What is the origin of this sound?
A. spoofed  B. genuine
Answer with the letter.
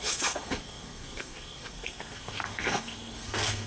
A